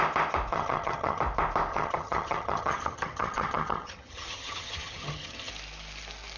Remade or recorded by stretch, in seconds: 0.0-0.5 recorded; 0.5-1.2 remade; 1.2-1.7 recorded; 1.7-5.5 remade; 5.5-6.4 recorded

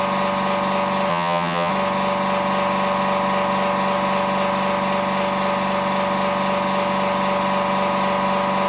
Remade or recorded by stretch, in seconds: 0.0-1.1 recorded; 1.1-1.7 remade; 1.7-8.7 recorded

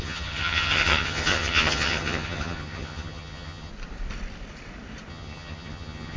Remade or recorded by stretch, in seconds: 0.0-3.7 remade; 3.7-5.1 recorded; 5.1-6.2 remade

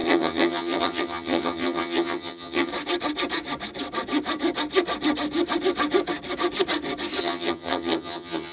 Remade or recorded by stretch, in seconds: 0.0-2.7 remade; 2.7-7.2 recorded; 7.2-8.5 remade

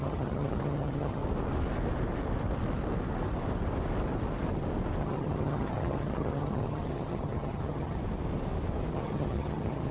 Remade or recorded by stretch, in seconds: 0.0-1.2 remade; 1.2-5.0 recorded; 5.0-8.0 remade; 8.0-8.9 recorded; 8.9-9.9 remade

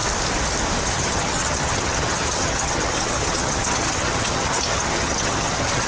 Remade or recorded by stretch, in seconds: 0.0-0.8 recorded; 0.8-5.9 remade